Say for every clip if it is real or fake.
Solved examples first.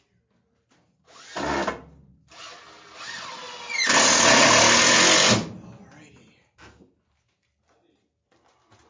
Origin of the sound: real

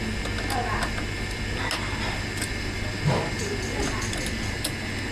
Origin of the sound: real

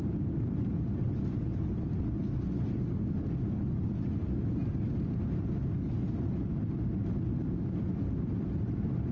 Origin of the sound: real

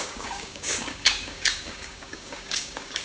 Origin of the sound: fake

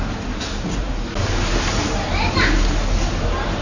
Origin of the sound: real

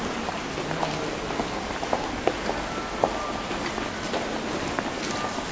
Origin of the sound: real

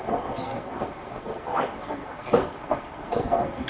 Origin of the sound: fake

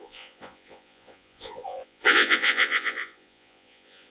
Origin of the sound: fake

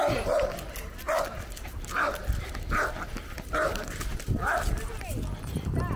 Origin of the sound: real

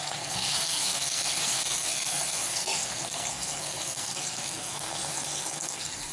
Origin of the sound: fake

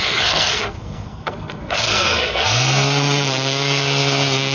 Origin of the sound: fake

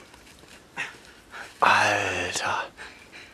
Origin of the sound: real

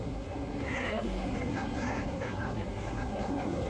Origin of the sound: fake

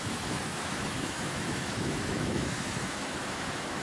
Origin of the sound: fake